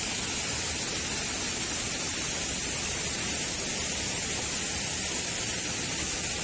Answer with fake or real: real